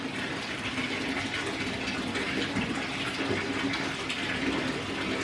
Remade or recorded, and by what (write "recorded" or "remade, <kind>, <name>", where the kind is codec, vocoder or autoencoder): recorded